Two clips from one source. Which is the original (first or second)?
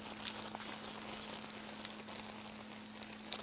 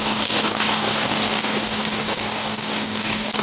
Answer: first